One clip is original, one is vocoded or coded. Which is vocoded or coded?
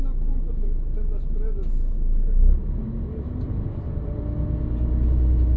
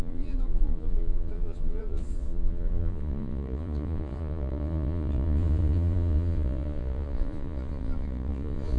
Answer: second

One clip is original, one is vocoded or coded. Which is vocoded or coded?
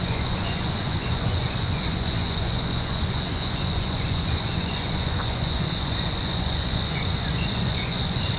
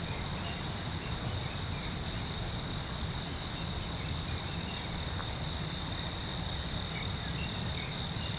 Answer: first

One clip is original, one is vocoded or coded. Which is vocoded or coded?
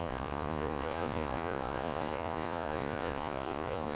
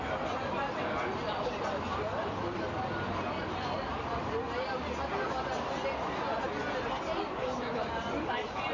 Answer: first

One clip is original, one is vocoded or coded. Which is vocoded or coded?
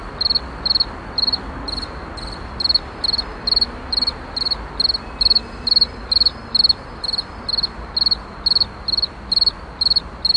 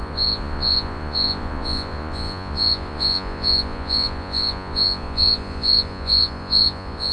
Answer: second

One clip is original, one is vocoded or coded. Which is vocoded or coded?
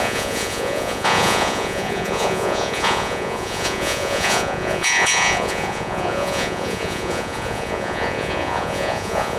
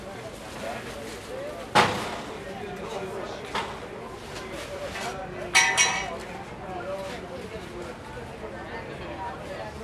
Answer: first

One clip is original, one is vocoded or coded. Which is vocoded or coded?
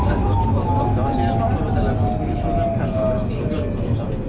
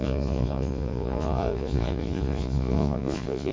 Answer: second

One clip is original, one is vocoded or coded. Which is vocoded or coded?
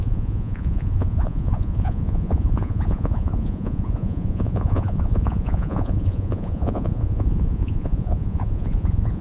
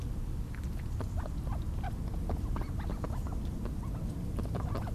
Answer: first